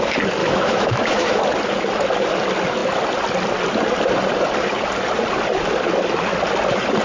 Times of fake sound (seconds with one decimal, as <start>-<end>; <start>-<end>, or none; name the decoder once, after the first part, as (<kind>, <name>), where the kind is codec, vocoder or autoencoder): 0.4-1.4 (autoencoder, DAC-VAE)